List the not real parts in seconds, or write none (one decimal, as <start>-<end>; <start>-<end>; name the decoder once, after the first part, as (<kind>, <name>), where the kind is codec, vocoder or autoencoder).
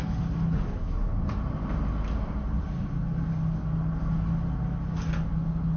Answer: none